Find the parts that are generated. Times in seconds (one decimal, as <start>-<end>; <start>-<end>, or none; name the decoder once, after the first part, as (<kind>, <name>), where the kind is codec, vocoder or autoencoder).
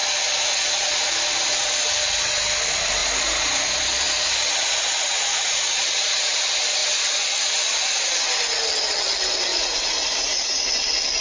9.5-10.7 (vocoder, Vocos)